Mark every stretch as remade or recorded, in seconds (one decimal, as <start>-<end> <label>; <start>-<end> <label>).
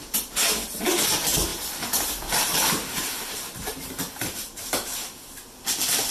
0.0-1.5 recorded; 1.5-5.2 remade; 5.2-6.1 recorded